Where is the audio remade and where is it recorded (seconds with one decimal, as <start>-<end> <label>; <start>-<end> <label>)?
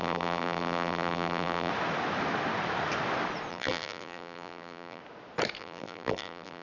0.0-1.7 remade; 1.7-3.5 recorded; 3.5-5.0 remade; 5.0-5.6 recorded; 5.6-6.6 remade